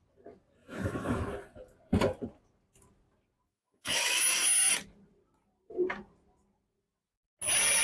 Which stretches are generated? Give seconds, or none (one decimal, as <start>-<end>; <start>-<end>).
0.6-1.2; 3.5-4.7